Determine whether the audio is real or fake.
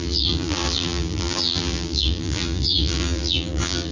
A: fake